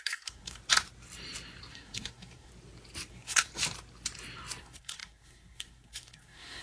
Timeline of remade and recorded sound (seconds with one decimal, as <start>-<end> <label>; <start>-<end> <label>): 0.0-0.6 remade; 0.6-1.7 recorded; 1.7-2.5 remade; 2.5-3.1 recorded; 3.1-3.5 remade; 3.5-4.6 recorded; 4.6-6.6 remade